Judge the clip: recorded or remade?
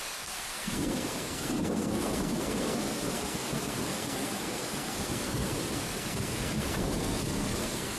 remade